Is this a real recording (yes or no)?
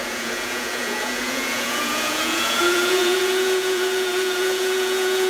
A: no